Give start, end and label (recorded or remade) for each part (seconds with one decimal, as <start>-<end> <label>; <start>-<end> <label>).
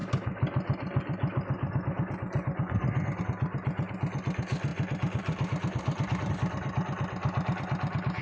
0.0-4.7 recorded; 4.7-6.3 remade; 6.3-8.2 recorded